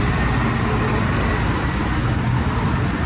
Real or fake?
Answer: real